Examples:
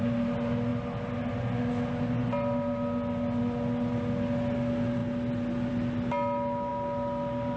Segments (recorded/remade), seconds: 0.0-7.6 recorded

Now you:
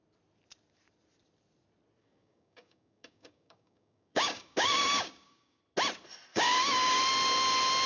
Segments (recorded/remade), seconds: 0.0-2.0 recorded; 2.0-5.6 remade; 5.6-6.3 recorded; 6.3-7.0 remade; 7.0-7.9 recorded